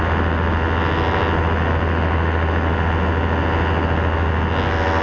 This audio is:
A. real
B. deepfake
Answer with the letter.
A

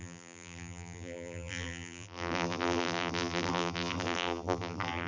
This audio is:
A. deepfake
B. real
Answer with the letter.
A